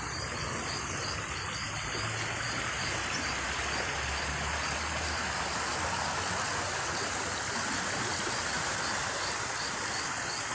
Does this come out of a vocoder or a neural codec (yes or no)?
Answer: no